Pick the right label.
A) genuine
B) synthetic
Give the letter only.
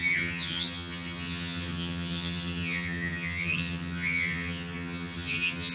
B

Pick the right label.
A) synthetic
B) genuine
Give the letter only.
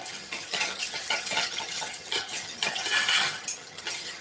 A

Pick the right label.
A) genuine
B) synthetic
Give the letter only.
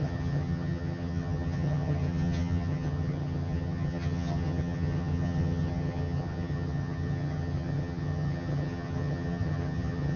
B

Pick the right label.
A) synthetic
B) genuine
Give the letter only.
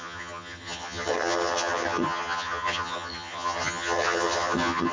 A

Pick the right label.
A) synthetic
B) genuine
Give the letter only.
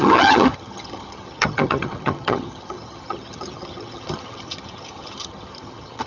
A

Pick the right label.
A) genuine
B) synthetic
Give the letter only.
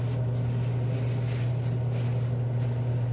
A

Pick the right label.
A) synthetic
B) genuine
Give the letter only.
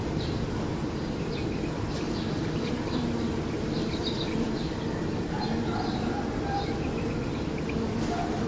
B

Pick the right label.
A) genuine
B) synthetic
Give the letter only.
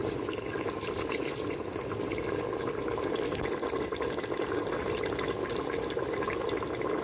A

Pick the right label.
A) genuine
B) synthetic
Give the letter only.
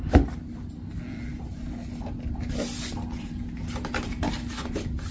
A